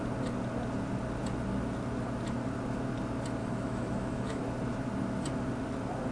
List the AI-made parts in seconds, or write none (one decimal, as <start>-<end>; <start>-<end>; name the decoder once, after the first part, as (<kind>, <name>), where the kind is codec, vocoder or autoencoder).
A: 3.4-4.4 (autoencoder, DAC-VAE)